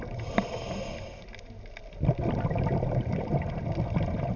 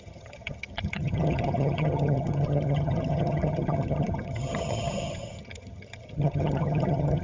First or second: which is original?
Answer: first